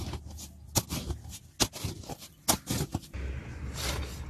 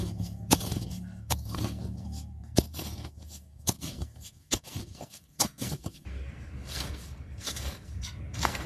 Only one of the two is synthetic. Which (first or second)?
second